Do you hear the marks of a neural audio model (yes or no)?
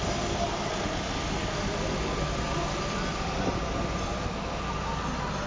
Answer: no